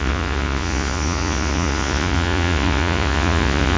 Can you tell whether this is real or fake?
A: fake